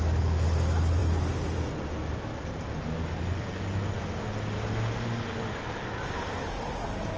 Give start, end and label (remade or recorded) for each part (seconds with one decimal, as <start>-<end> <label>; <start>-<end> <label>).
0.0-7.2 recorded